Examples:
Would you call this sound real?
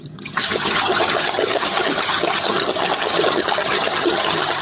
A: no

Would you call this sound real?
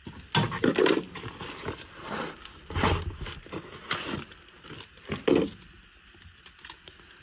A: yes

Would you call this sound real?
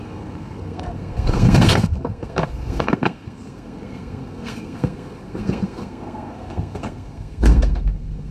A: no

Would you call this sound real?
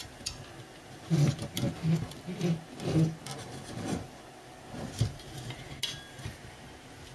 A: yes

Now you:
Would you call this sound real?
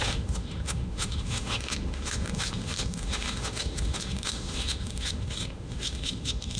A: no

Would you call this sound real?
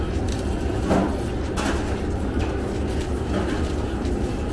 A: yes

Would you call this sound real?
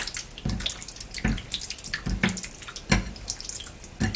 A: yes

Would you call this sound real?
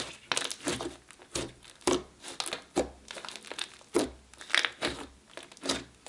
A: yes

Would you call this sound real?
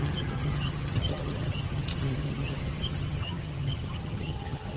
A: no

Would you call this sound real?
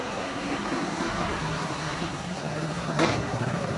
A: no